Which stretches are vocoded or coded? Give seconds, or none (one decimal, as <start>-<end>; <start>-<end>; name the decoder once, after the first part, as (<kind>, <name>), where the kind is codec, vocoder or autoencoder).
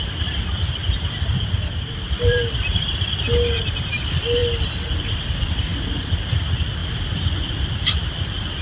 0.8-3.1 (vocoder, BigVGAN v2); 6.8-7.6